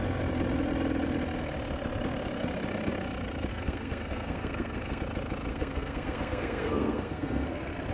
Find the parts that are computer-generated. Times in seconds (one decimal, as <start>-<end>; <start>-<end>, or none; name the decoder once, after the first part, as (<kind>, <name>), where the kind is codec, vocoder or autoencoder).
3.5-5.0 (codec, SNAC); 5.5-7.9